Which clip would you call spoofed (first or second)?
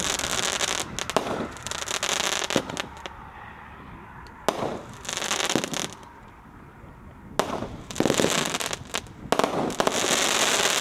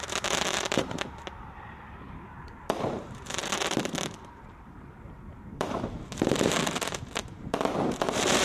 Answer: second